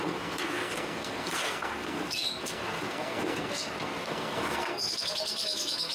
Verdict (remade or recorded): remade